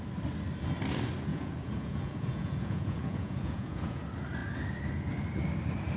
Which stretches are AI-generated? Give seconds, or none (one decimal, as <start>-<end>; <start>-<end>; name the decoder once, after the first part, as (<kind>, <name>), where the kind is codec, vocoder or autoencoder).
1.3-4.0 (vocoder, Vocos)